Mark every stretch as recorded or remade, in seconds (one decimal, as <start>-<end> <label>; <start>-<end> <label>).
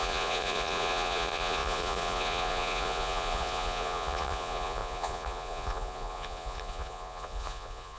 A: 0.0-8.0 remade